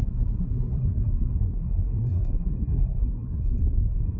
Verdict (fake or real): fake